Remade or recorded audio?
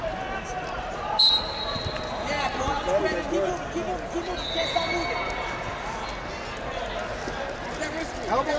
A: recorded